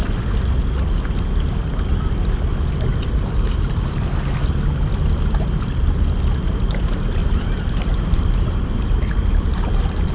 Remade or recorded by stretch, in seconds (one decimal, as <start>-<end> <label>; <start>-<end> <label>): 0.0-2.9 recorded; 2.9-4.1 remade; 4.1-7.2 recorded; 7.2-10.1 remade

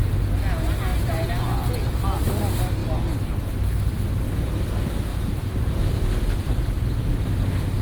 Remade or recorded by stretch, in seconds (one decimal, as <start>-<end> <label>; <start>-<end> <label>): 0.0-5.1 recorded; 5.1-7.0 remade; 7.0-7.8 recorded

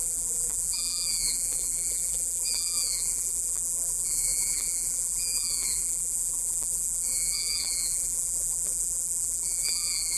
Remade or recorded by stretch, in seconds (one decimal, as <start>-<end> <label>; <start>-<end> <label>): 0.0-10.2 remade

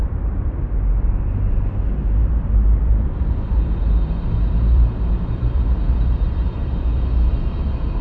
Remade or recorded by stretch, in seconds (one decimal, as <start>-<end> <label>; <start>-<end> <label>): 0.0-0.6 remade; 0.6-2.2 recorded; 2.2-7.0 remade; 7.0-8.0 recorded